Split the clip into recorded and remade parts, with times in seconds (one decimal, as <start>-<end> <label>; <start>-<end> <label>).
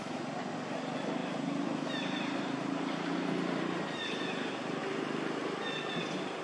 0.0-1.2 recorded; 1.2-3.3 remade; 3.3-6.4 recorded